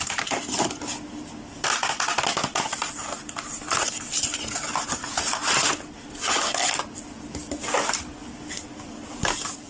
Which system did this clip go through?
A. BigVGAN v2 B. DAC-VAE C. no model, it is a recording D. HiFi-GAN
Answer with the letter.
C